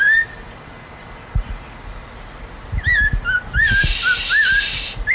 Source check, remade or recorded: remade